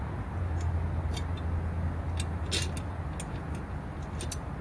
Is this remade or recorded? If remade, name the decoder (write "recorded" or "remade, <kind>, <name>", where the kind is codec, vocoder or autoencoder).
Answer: recorded